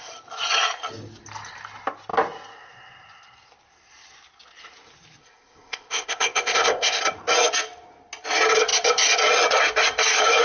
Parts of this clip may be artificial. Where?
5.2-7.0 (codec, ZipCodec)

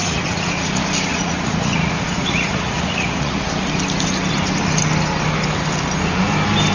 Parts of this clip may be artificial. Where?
0.0-0.7 (vocoder, Vocos); 1.1-3.5

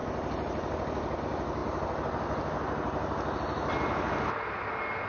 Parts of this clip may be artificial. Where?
none

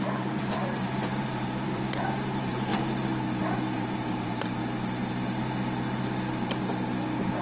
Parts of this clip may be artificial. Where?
0.0-2.7 (vocoder, BigVGAN v2); 3.4-4.6

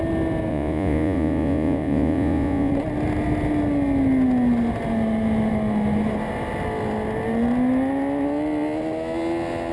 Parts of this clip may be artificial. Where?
0.5-2.7 (vocoder, Vocos)

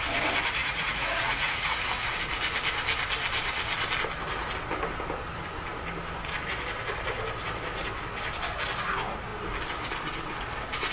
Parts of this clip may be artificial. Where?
0.6-1.8 (vocoder, Vocos)